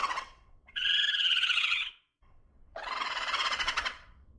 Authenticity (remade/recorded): remade